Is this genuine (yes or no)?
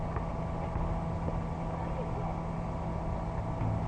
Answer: yes